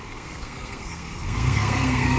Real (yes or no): no